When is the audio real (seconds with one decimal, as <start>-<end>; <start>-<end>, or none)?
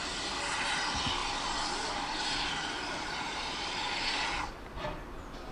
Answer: 0.0-1.2; 4.5-5.5